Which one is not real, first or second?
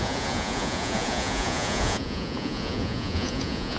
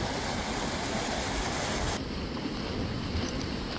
first